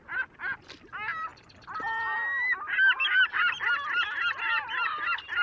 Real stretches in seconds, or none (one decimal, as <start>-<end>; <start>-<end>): 0.0-5.4